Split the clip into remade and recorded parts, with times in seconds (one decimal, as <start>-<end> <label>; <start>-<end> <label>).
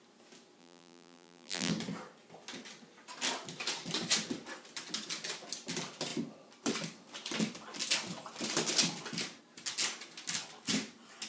0.0-0.6 recorded; 0.6-1.7 remade; 1.7-11.3 recorded